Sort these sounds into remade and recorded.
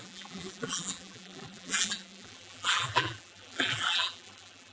remade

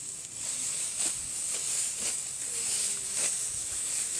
remade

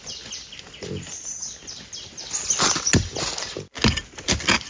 recorded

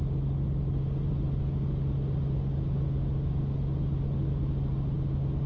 recorded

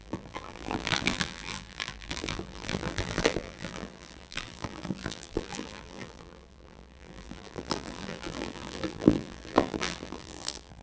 remade